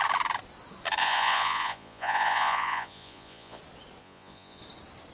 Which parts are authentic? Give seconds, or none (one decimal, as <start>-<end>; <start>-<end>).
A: 0.0-1.0; 3.6-4.0; 4.6-5.1